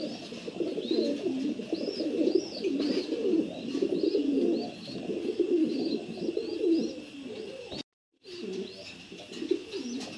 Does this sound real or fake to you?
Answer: real